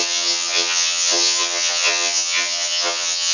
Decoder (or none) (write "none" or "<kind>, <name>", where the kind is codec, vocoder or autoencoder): vocoder, HiFi-GAN